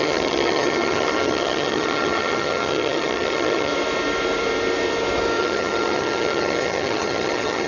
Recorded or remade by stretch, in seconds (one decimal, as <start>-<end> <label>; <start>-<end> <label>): 0.0-3.7 remade; 3.7-5.4 recorded; 5.4-7.7 remade